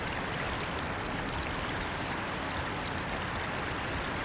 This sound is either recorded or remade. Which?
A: recorded